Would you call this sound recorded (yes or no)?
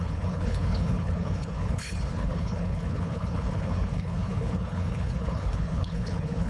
no